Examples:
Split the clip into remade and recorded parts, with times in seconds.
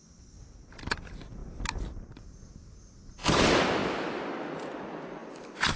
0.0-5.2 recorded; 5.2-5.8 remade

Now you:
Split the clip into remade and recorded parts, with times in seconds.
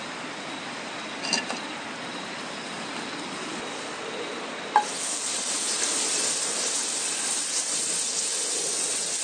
0.0-9.2 recorded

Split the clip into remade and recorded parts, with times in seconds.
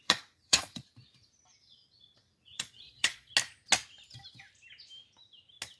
0.0-0.9 remade; 0.9-1.6 recorded; 1.6-3.3 remade; 3.3-5.8 recorded